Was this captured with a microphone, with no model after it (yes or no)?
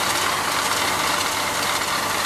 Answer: yes